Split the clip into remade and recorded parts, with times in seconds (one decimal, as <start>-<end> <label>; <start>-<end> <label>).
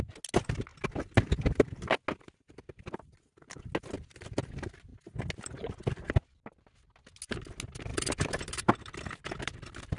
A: 0.0-0.7 recorded; 0.7-1.9 remade; 1.9-7.9 recorded; 7.9-10.0 remade